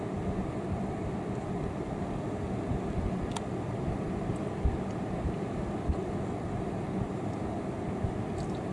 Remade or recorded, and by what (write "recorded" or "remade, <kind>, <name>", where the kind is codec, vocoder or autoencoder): recorded